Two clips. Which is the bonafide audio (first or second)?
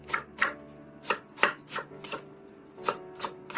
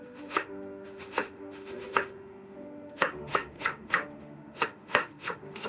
first